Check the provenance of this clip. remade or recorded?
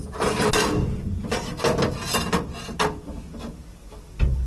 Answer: recorded